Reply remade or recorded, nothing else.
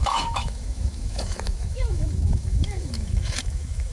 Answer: remade